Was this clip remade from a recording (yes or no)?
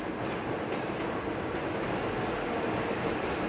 no